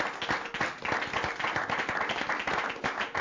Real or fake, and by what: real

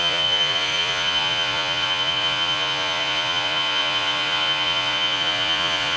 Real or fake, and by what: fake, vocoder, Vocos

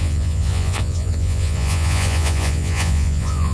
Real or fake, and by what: fake, vocoder, Vocos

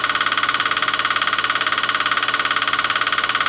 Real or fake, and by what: real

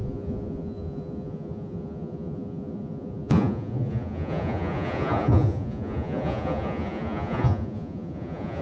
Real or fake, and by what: fake, vocoder, Vocos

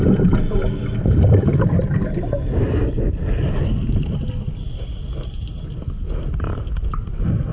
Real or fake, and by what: real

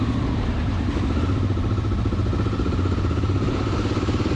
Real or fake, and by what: real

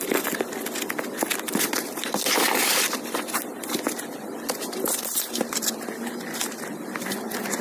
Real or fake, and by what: real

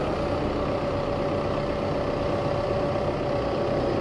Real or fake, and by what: real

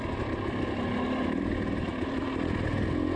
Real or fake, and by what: real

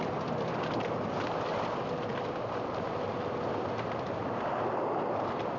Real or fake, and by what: real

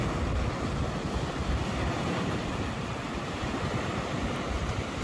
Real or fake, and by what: real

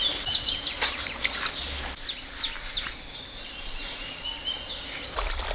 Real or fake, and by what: real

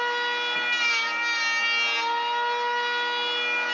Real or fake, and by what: real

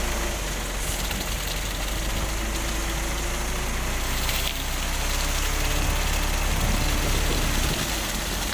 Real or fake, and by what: real